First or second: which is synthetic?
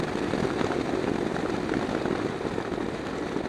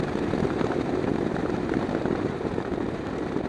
second